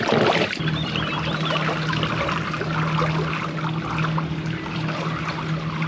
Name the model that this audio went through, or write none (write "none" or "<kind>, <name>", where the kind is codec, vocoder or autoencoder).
none